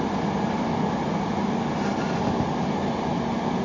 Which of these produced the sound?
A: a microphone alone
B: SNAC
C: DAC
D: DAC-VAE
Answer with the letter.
A